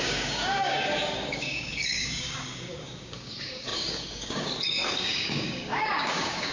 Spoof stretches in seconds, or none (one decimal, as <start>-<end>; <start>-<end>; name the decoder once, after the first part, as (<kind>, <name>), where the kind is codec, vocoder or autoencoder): 0.0-6.5 (codec, DAC)